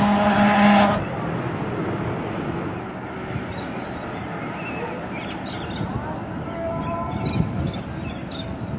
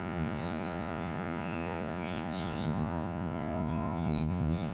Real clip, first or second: first